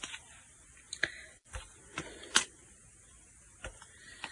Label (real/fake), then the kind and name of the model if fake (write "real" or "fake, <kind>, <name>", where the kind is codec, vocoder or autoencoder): real